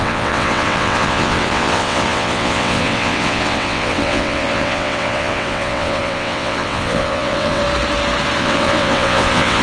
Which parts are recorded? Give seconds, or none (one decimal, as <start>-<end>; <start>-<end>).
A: 7.6-8.4